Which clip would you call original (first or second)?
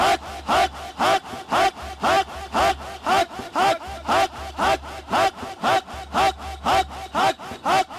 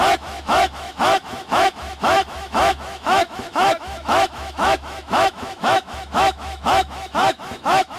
first